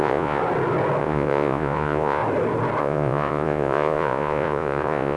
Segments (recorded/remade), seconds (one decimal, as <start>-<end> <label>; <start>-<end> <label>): 0.0-0.4 remade; 0.4-1.0 recorded; 1.0-2.2 remade; 2.2-2.8 recorded; 2.8-5.2 remade